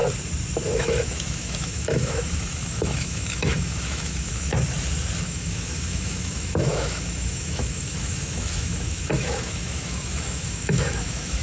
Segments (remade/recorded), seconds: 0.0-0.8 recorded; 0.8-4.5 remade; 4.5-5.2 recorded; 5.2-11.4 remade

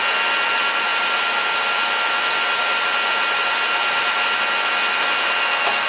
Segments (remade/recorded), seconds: 0.0-5.9 recorded

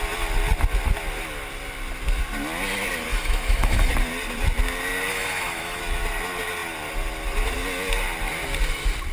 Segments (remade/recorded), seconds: 0.0-3.1 recorded; 3.1-3.9 remade; 3.9-5.1 recorded; 5.1-5.8 remade; 5.8-9.1 recorded

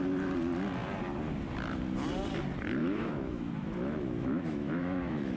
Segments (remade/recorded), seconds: 0.0-2.8 recorded; 2.8-5.4 remade